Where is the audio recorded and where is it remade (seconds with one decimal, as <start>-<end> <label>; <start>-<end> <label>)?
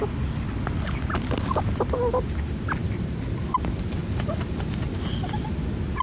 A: 0.0-4.0 recorded; 4.0-4.6 remade; 4.6-6.0 recorded